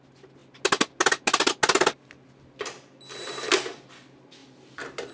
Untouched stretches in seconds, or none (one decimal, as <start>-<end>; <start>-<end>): 0.0-5.1

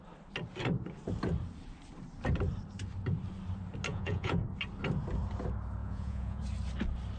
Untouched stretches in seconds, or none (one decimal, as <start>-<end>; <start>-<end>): 0.0-3.9; 4.4-5.8; 6.4-7.2

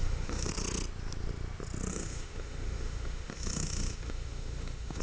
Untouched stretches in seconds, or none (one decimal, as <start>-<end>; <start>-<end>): 0.5-1.9